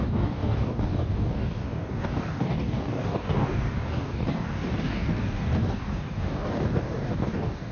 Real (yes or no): no